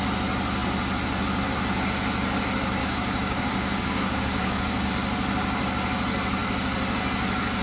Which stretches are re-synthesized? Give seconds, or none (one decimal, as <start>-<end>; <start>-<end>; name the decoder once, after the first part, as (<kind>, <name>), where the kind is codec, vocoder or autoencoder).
2.8-4.9 (codec, DAC)